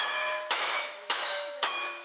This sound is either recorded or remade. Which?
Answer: remade